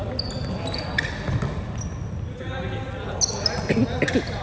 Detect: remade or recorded recorded